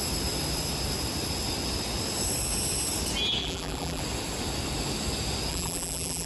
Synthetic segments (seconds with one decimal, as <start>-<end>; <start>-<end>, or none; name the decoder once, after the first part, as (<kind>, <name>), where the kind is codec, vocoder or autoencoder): 3.4-4.0 (vocoder, BigVGAN v2); 5.5-6.3